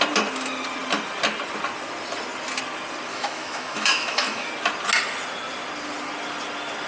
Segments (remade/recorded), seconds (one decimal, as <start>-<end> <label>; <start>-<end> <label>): 0.0-3.1 recorded; 3.1-4.5 remade; 4.5-6.9 recorded